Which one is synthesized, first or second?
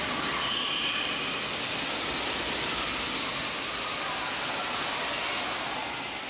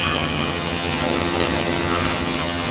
second